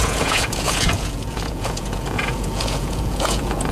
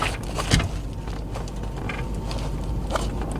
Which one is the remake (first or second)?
first